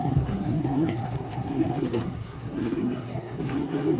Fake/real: fake